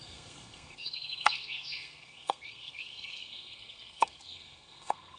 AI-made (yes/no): yes